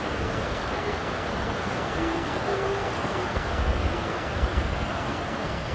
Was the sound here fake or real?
fake